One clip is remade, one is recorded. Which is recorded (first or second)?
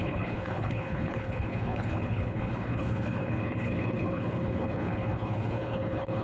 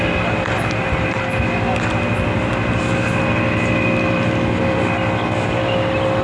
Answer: second